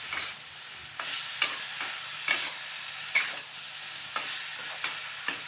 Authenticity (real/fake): real